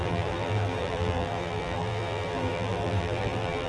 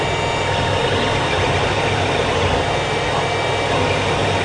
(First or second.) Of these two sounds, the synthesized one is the first